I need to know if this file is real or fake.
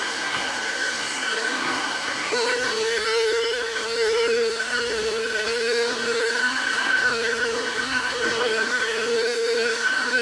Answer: fake